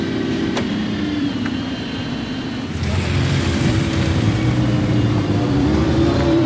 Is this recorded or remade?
remade